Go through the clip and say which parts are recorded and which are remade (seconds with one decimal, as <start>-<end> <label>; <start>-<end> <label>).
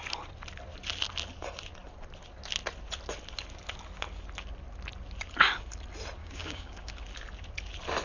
0.0-6.2 recorded; 6.2-6.9 remade; 6.9-8.0 recorded